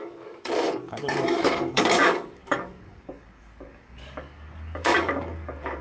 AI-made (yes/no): yes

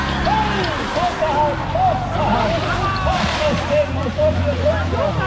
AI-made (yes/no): no